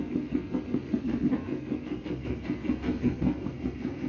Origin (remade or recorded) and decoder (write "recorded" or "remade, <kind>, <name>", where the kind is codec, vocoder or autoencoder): remade, codec, SNAC